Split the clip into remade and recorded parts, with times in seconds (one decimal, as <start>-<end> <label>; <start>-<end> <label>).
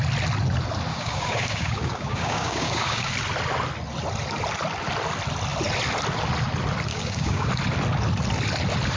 0.0-0.9 recorded; 0.9-3.1 remade; 3.1-6.9 recorded; 6.9-7.5 remade; 7.5-9.0 recorded